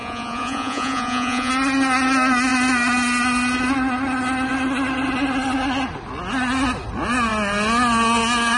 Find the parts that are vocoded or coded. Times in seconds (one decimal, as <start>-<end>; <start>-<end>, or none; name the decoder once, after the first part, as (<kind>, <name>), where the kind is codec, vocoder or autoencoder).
0.0-1.5 (vocoder, Vocos)